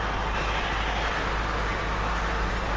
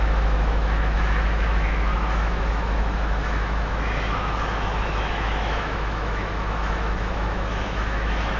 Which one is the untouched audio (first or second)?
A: first